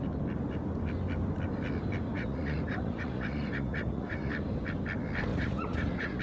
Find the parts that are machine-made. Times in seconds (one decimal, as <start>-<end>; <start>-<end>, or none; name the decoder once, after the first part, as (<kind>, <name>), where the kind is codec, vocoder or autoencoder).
2.1-4.4 (vocoder, Vocos); 5.3-6.2